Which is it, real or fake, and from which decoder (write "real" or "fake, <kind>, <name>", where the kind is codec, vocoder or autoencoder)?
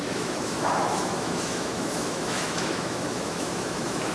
fake, autoencoder, DAC-VAE